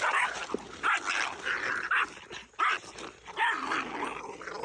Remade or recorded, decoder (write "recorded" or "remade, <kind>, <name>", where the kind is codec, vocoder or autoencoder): recorded